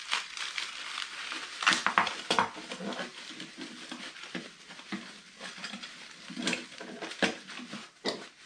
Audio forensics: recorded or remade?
recorded